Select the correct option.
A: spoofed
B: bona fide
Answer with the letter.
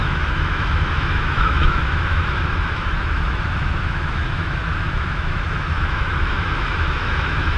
A